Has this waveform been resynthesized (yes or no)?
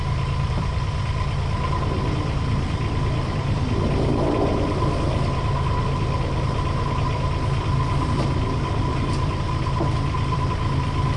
yes